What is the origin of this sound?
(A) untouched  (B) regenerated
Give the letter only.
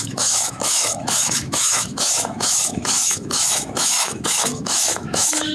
B